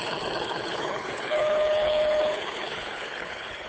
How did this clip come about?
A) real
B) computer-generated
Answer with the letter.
B